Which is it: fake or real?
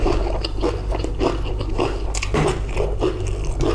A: real